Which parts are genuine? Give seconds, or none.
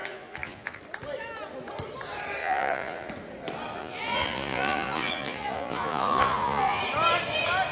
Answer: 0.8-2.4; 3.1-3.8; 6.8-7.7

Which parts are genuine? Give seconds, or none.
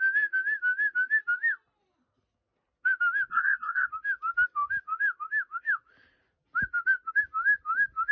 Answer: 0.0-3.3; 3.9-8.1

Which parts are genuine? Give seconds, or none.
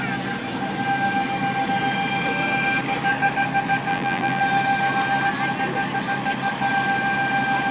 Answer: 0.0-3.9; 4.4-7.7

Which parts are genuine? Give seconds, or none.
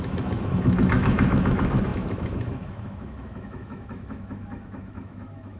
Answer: none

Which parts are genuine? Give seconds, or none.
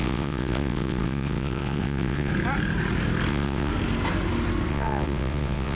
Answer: 2.3-3.3; 3.7-4.7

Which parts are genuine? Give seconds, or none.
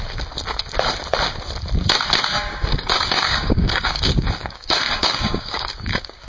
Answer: 0.0-2.3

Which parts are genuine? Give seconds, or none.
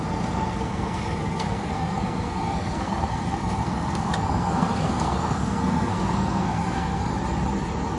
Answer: 7.1-8.0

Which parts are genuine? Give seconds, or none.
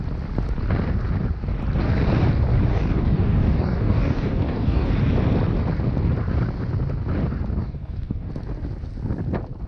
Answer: 0.0-2.7; 4.9-7.6; 8.3-9.7